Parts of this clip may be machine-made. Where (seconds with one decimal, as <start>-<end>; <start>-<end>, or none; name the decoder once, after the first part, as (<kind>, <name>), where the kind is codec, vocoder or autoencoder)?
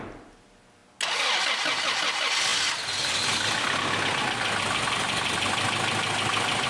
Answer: none